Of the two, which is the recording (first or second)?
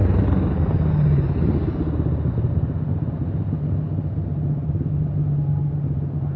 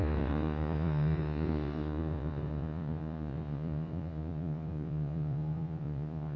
first